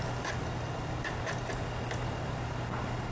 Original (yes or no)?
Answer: yes